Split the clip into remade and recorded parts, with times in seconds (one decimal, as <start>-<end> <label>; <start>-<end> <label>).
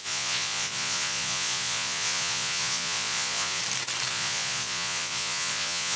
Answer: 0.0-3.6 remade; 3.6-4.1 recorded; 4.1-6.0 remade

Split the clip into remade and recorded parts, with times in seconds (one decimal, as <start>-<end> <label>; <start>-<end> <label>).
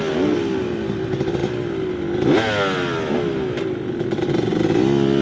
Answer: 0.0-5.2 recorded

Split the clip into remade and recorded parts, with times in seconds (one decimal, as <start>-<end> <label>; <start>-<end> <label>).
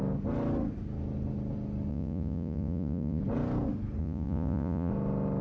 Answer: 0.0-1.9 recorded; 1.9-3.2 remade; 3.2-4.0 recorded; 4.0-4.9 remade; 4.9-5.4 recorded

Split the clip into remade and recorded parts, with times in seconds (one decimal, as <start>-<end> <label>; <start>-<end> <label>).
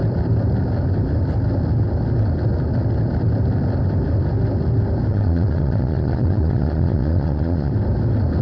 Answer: 0.0-5.1 recorded; 5.1-7.7 remade; 7.7-8.4 recorded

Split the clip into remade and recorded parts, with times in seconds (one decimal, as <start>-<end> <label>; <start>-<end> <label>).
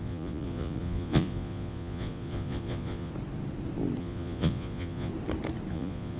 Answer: 0.0-3.1 remade; 3.1-4.0 recorded; 4.0-5.1 remade; 5.1-5.7 recorded; 5.7-6.2 remade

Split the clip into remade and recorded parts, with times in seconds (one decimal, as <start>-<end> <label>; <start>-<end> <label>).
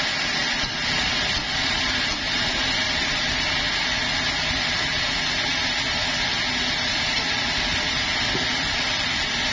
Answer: 0.0-9.5 recorded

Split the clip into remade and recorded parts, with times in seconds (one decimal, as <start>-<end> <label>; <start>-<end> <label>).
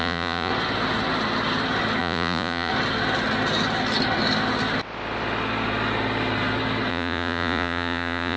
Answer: 0.0-0.5 remade; 0.5-2.0 recorded; 2.0-2.7 remade; 2.7-6.9 recorded; 6.9-8.4 remade